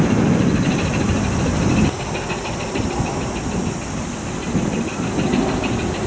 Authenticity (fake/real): real